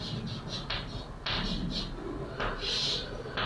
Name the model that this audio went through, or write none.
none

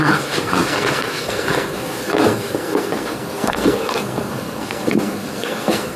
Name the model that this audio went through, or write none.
codec, SNAC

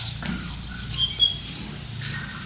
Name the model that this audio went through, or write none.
none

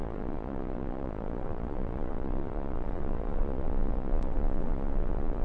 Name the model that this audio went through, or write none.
vocoder, Vocos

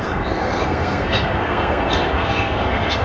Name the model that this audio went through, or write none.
codec, SNAC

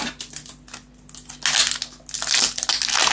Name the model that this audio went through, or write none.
none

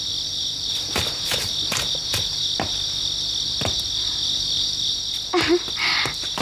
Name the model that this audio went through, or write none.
none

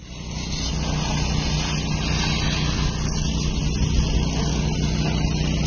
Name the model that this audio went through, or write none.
none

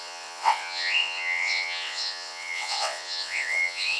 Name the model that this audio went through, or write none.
vocoder, WaveNeXt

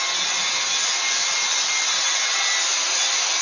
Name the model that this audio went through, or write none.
none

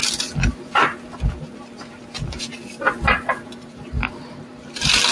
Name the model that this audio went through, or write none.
vocoder, BigVGAN v2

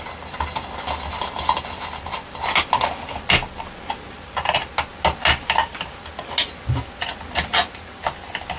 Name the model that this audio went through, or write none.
none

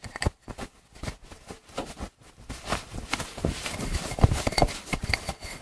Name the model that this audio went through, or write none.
none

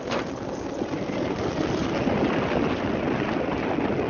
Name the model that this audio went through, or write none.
none